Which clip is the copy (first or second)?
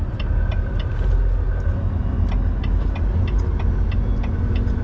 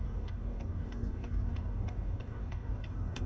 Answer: second